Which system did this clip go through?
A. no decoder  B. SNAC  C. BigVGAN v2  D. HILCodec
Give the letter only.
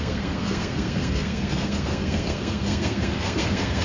B